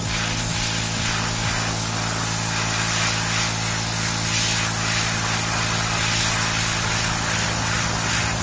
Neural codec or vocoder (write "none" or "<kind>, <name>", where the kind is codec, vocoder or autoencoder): none